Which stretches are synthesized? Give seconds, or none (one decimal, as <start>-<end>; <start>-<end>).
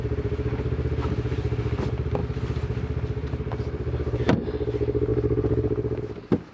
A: none